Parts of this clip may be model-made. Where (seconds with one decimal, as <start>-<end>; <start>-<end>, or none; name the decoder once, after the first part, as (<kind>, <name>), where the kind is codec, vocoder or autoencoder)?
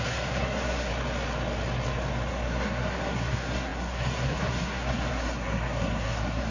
0.0-0.9 (codec, SNAC); 2.3-6.5